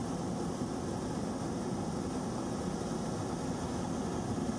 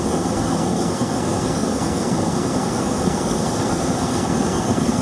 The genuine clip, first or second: first